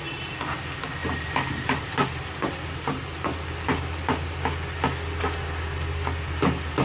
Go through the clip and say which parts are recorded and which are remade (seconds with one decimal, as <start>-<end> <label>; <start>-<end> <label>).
0.0-1.0 recorded; 1.0-1.8 remade; 1.8-6.8 recorded